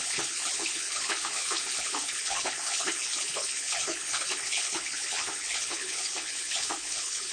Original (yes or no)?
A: no